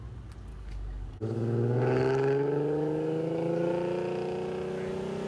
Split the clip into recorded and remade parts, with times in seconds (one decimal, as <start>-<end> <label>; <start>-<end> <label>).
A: 0.0-0.5 recorded; 0.5-3.7 remade; 3.7-5.3 recorded